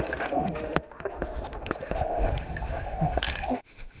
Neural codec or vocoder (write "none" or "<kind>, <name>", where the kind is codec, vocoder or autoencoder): autoencoder, DAC-VAE